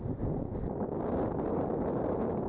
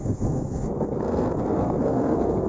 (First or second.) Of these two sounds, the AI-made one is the second